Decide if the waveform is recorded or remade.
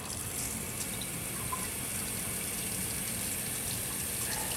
recorded